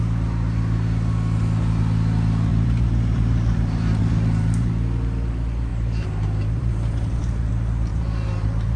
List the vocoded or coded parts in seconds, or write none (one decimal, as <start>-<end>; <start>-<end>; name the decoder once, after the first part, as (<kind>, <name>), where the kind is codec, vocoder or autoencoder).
2.5-4.7 (vocoder, BigVGAN v2); 5.7-7.5; 7.9-8.8